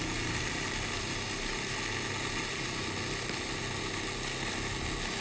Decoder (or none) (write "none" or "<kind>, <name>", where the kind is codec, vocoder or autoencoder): none